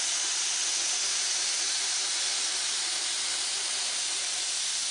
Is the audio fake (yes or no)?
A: no